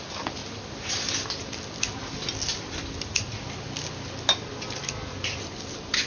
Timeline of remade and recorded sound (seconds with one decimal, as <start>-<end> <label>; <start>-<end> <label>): 0.0-6.1 recorded